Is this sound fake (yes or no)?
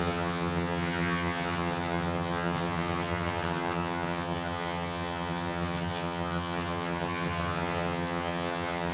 yes